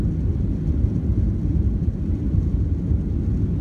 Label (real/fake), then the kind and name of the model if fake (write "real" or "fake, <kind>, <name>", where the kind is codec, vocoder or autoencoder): real